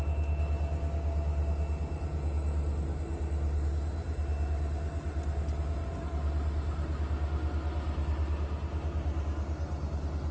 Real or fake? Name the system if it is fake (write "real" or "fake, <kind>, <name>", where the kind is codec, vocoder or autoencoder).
real